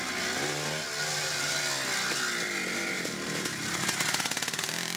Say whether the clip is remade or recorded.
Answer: recorded